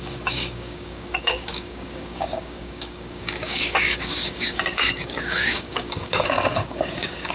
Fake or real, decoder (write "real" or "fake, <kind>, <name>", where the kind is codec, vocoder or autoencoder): fake, codec, DAC